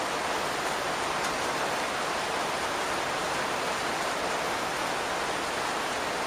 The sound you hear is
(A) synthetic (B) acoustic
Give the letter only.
B